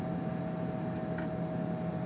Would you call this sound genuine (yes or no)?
yes